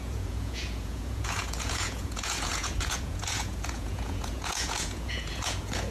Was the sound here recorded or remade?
remade